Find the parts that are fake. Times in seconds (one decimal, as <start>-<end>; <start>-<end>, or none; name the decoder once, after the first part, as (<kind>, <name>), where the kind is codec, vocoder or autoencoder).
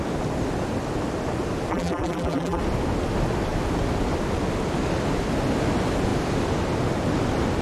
1.7-2.6 (vocoder, BigVGAN v2)